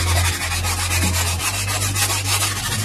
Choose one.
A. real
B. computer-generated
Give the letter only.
A